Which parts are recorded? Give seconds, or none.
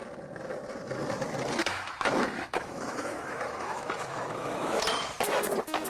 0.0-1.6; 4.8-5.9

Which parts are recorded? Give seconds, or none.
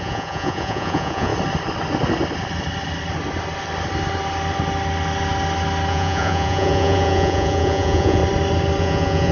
1.3-5.9; 8.2-8.8